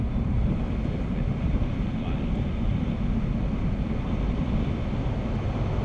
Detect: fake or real real